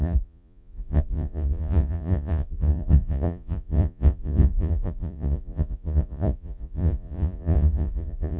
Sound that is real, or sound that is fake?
fake